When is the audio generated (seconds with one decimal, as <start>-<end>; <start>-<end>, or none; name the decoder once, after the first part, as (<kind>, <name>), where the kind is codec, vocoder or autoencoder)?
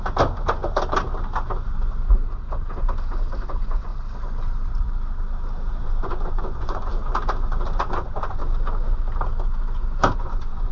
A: 3.4-3.9 (vocoder, Vocos); 5.8-6.9; 7.8-8.4; 10.2-10.7